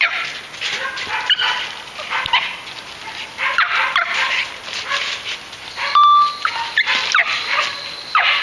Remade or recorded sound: recorded